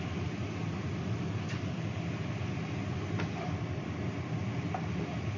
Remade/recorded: recorded